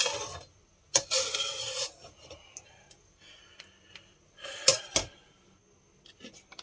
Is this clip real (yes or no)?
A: yes